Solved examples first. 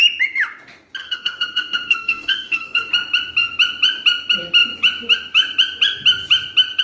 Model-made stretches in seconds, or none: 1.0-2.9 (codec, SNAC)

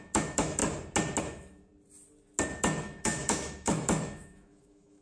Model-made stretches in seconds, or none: 0.0-0.6 (autoencoder, DAC-VAE); 1.2-1.7; 2.6-5.0

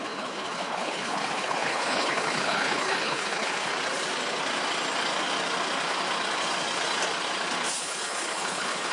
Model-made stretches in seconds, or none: 0.0-3.7 (codec, HILCodec); 7.8-8.9

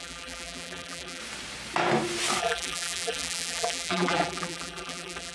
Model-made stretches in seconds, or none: 0.0-1.2 (vocoder, BigVGAN v2); 2.4-5.3

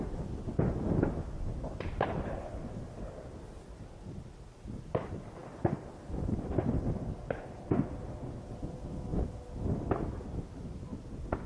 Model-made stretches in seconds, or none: none

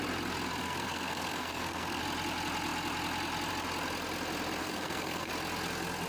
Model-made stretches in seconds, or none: 0.6-2.0 (codec, SNAC); 4.6-5.3

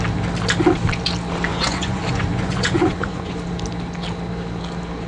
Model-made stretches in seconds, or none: 1.5-3.3 (vocoder, Vocos)

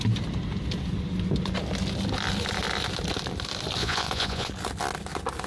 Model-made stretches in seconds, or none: 3.8-4.5 (vocoder, Vocos)